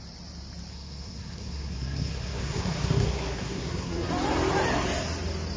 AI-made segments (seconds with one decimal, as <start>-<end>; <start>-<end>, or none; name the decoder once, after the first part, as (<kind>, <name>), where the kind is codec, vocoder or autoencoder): 0.7-4.1 (codec, SNAC)